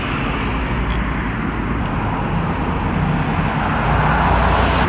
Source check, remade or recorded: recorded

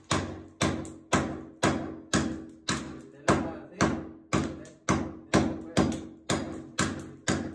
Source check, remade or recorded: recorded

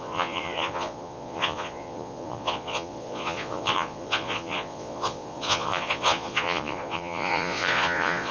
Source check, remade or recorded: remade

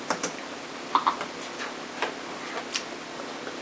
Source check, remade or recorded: recorded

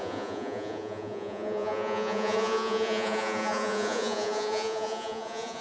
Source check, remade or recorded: remade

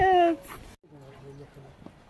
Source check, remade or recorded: recorded